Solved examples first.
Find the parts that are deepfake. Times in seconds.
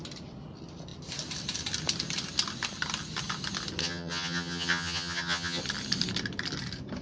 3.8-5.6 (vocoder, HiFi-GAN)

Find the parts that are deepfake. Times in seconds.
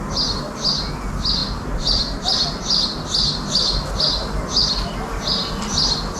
none